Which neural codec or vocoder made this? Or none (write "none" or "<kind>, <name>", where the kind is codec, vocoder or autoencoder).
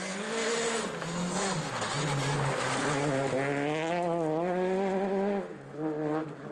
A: none